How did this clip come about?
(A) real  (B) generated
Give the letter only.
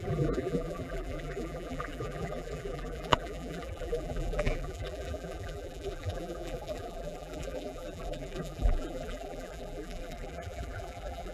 B